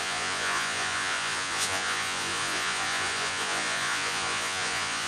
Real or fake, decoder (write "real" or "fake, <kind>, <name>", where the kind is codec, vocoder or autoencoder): fake, vocoder, Vocos